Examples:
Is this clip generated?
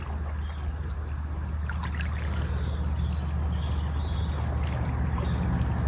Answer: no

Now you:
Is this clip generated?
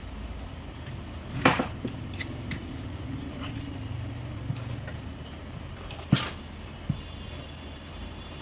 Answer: yes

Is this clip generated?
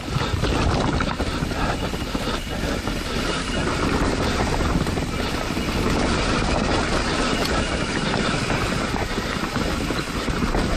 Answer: no